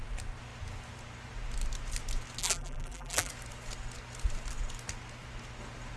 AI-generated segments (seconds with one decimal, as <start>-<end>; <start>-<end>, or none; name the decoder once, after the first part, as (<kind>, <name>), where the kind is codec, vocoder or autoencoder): 2.4-3.3 (vocoder, BigVGAN v2)